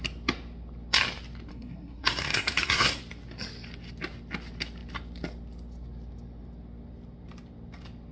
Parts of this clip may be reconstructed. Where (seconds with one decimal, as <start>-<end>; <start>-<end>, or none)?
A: 1.5-3.0